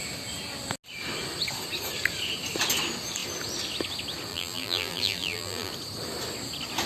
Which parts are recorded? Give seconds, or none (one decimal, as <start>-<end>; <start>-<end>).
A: 0.0-4.3; 5.7-6.9